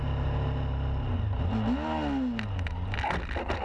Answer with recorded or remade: recorded